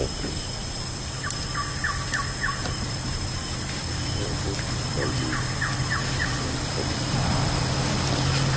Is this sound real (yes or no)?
yes